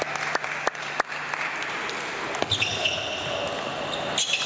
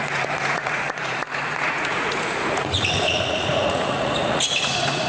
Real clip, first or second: first